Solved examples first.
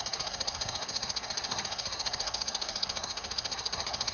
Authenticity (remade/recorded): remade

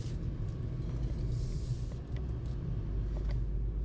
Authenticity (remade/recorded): recorded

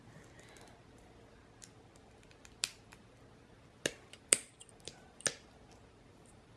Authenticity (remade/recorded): recorded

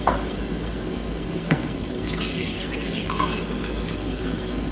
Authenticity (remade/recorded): remade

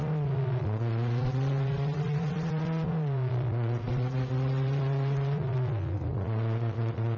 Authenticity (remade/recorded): remade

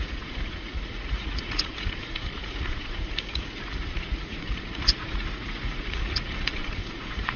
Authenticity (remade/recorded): remade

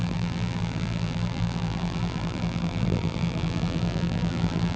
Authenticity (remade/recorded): remade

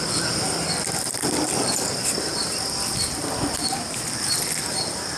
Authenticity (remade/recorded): recorded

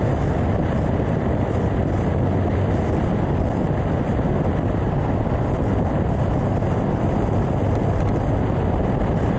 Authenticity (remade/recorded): recorded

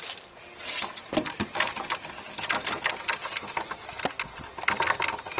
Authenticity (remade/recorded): recorded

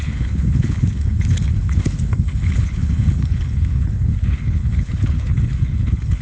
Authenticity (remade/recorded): remade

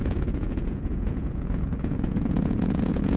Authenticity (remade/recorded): remade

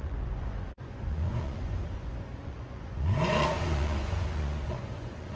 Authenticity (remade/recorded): remade